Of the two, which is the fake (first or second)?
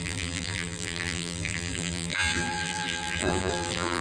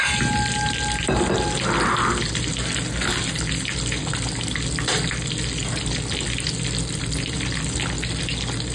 first